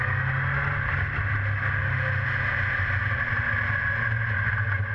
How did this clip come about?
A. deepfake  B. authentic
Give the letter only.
B